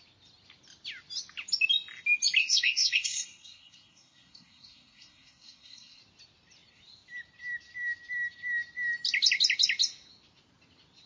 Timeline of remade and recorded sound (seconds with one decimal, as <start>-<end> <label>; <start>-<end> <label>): 0.0-2.4 recorded; 2.4-6.0 remade; 6.0-11.1 recorded